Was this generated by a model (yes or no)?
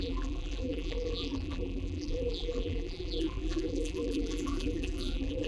yes